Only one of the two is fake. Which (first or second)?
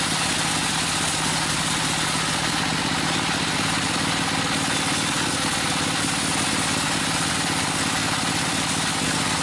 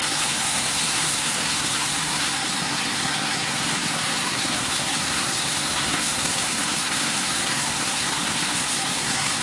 second